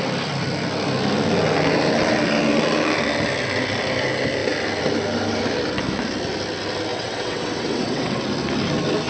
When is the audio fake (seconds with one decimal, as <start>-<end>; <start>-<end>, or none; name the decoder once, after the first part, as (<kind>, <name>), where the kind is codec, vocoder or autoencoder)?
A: 6.9-8.2 (vocoder, WaveNeXt)